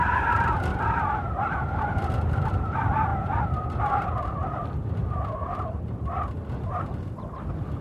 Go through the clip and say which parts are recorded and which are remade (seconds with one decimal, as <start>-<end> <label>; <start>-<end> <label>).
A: 0.0-5.4 recorded; 5.4-6.2 remade; 6.2-7.8 recorded